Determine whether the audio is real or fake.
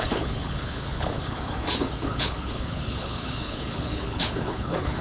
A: fake